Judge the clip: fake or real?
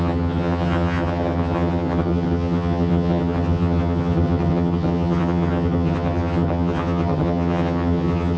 fake